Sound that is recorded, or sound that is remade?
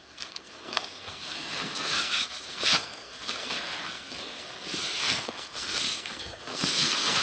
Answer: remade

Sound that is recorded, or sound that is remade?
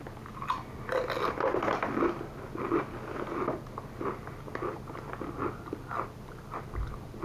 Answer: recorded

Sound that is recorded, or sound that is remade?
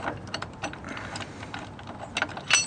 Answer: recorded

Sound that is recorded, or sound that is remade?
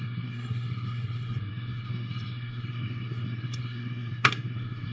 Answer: remade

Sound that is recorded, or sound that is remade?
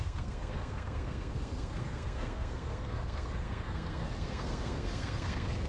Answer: remade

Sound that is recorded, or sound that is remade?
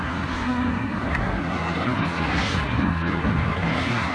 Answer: remade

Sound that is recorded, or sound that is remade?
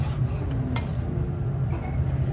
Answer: recorded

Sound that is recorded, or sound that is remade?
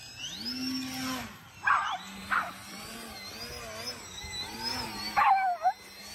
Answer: recorded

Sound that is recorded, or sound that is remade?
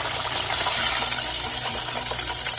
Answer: recorded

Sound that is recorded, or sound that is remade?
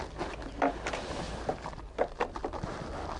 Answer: recorded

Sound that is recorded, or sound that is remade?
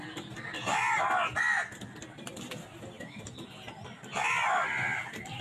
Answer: recorded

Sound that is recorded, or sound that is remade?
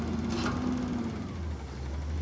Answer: recorded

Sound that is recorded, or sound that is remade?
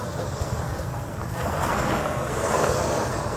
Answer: remade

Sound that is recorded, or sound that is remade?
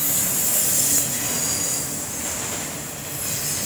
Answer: recorded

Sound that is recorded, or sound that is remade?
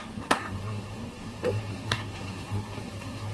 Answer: remade